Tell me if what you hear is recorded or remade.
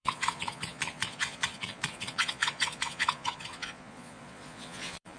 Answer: remade